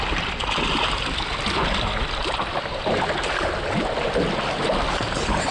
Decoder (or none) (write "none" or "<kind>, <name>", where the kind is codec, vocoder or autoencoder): none